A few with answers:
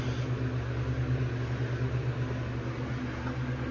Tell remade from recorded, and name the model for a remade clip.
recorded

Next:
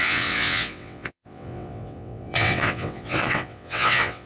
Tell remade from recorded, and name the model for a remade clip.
remade, vocoder, WaveNeXt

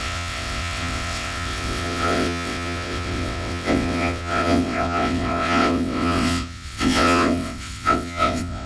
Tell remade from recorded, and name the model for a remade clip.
remade, vocoder, WaveNeXt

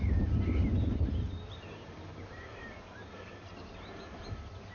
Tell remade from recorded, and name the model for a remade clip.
recorded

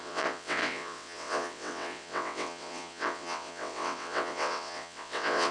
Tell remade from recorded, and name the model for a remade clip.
remade, vocoder, WaveNeXt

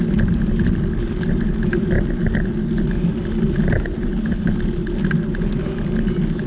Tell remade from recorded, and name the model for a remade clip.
recorded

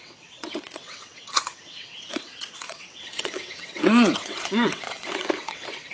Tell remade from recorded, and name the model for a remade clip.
remade, vocoder, WaveNeXt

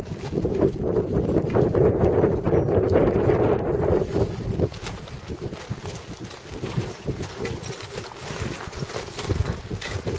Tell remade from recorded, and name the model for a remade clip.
recorded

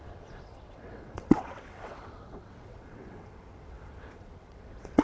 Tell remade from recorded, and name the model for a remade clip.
remade, vocoder, WaveNeXt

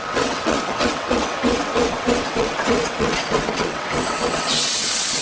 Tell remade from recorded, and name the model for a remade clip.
remade, vocoder, WaveNeXt